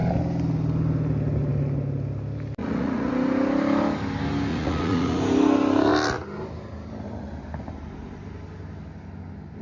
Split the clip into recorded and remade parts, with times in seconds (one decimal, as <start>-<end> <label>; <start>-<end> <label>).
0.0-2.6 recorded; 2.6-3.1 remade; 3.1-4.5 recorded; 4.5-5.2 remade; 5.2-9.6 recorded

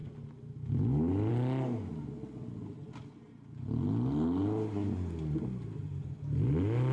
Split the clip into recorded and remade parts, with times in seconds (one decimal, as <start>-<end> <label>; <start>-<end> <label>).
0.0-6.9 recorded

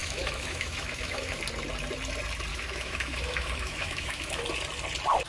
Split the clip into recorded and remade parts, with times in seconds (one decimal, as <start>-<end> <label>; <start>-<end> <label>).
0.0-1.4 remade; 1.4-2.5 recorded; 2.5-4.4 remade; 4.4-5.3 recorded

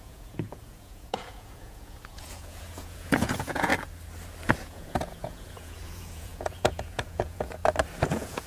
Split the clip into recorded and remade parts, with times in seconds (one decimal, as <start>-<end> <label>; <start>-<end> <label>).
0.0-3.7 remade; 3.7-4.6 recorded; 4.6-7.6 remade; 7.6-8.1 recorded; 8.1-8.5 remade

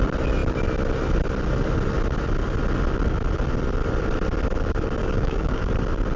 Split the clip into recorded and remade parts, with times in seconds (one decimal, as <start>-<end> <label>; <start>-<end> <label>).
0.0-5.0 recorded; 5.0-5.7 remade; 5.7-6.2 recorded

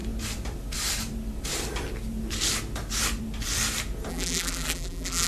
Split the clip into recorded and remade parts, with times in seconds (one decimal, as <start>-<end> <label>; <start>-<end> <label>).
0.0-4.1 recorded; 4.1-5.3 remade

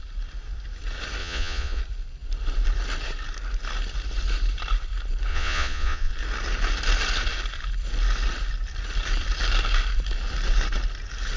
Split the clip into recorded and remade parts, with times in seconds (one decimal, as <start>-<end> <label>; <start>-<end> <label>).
0.0-1.2 recorded; 1.2-1.8 remade; 1.8-5.3 recorded; 5.3-6.1 remade; 6.1-11.4 recorded

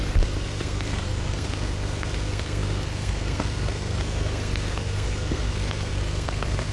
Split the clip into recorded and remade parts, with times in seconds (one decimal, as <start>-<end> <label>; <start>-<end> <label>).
0.0-6.7 remade